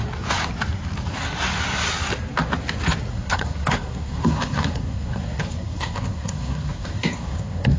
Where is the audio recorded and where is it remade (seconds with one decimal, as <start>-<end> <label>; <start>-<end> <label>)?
0.0-3.1 recorded; 3.1-7.8 remade